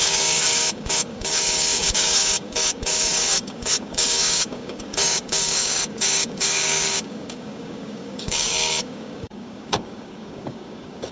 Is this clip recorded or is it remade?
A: remade